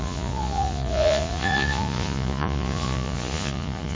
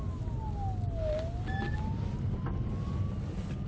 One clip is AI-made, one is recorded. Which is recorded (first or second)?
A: second